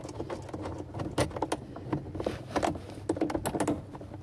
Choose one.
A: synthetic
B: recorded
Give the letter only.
B